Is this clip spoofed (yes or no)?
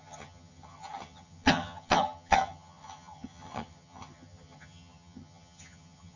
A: yes